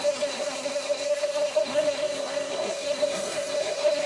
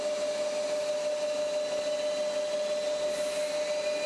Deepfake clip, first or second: first